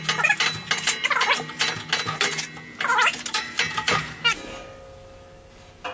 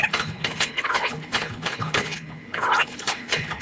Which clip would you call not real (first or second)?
second